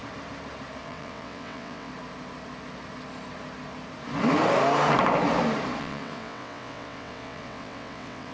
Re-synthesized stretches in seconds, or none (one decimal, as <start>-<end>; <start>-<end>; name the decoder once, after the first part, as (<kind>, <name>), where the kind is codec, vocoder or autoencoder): 0.8-1.9 (vocoder, WaveNeXt); 5.8-8.3